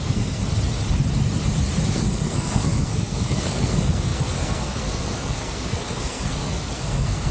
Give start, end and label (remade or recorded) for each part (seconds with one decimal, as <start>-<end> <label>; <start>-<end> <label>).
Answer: 0.0-0.4 remade; 0.4-1.9 recorded; 1.9-7.3 remade